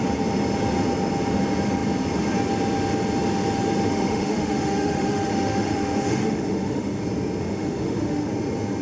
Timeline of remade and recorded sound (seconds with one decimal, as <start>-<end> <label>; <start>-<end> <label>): 0.0-3.9 recorded; 3.9-7.0 remade; 7.0-7.4 recorded; 7.4-8.3 remade; 8.3-8.8 recorded